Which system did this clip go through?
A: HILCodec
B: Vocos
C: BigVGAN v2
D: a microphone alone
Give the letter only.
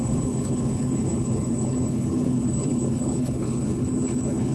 A